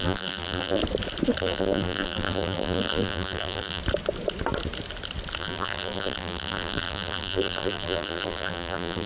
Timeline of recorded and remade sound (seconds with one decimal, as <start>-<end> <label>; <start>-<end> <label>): 0.0-0.8 remade; 0.8-1.4 recorded; 1.4-3.8 remade; 3.8-5.4 recorded; 5.4-9.1 remade